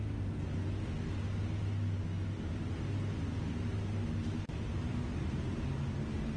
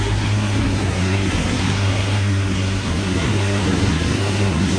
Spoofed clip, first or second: second